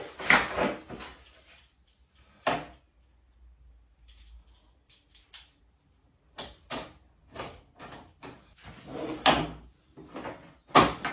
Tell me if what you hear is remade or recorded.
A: recorded